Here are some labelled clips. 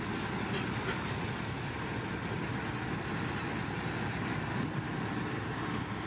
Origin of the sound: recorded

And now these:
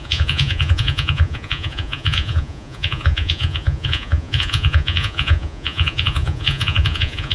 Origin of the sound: remade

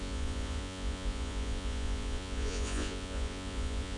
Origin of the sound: remade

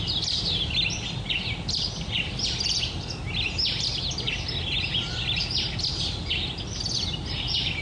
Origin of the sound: recorded